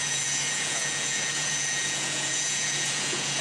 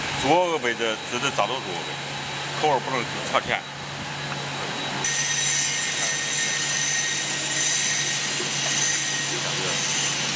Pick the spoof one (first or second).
first